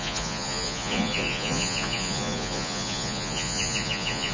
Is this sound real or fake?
fake